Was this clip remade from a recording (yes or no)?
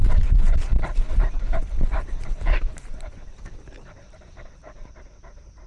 yes